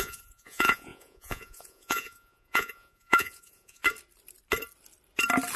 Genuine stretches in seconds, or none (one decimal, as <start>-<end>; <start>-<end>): 3.8-5.6